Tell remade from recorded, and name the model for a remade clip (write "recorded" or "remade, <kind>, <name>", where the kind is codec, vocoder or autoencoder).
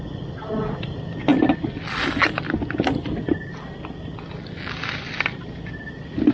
recorded